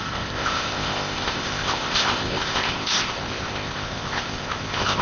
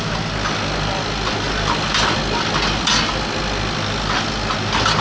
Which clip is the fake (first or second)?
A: first